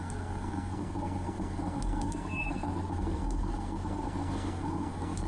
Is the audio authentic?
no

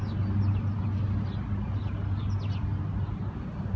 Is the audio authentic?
yes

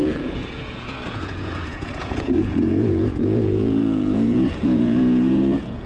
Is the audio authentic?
no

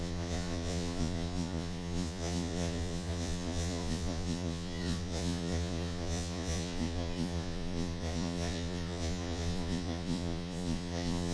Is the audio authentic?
no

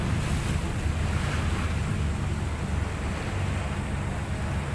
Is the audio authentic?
yes